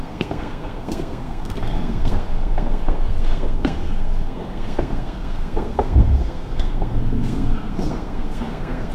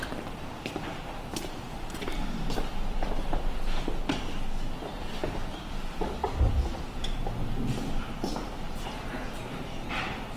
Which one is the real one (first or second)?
second